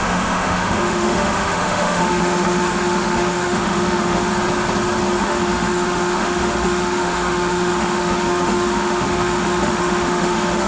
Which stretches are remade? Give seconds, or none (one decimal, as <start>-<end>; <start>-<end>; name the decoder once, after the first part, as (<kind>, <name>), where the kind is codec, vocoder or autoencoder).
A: 0.0-4.3 (autoencoder, DAC-VAE); 5.2-10.7